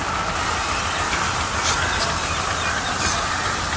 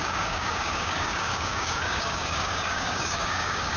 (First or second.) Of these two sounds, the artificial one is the second